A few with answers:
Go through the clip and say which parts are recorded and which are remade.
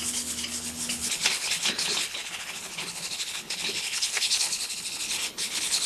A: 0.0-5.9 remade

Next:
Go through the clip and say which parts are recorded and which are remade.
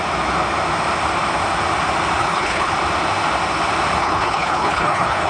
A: 0.0-2.2 recorded; 2.2-2.7 remade; 2.7-4.0 recorded; 4.0-5.3 remade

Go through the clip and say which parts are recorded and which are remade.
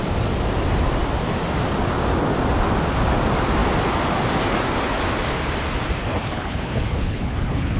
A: 0.0-6.1 recorded; 6.1-7.8 remade